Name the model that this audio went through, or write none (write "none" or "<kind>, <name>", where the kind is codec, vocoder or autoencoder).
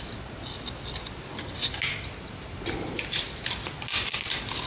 none